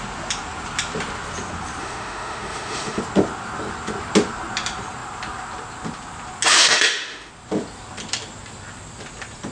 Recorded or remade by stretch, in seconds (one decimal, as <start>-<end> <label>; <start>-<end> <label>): 0.0-1.8 recorded; 1.8-3.0 remade; 3.0-6.5 recorded; 6.5-7.3 remade; 7.3-9.5 recorded